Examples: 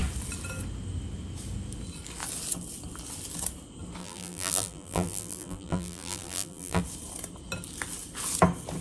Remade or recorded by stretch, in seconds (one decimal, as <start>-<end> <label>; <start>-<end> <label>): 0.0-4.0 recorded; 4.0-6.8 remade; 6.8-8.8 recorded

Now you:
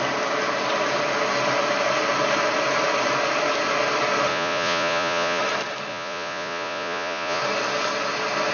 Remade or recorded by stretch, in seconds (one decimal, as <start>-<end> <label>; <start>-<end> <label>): 0.0-4.3 recorded; 4.3-5.4 remade; 5.4-5.9 recorded; 5.9-7.4 remade; 7.4-8.5 recorded

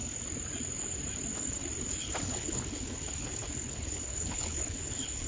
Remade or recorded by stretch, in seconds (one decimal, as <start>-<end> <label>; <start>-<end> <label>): 0.0-2.0 recorded; 2.0-5.3 remade

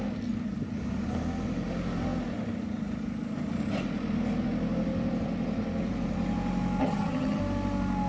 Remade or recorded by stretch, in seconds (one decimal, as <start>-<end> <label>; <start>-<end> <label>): 0.0-6.8 recorded; 6.8-7.4 remade; 7.4-8.1 recorded

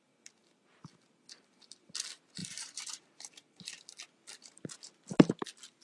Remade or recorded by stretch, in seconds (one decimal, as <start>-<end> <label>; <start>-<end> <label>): 0.0-2.4 recorded; 2.4-3.8 remade; 3.8-5.8 recorded

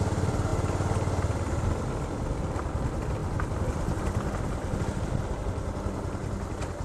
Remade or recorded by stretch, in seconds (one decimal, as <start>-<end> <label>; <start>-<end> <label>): 0.0-6.8 recorded

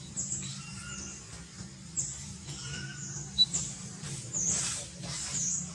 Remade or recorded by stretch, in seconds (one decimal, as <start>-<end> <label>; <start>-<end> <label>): 0.0-0.8 remade; 0.8-1.6 recorded; 1.6-5.7 remade